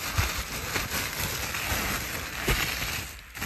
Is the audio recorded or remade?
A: recorded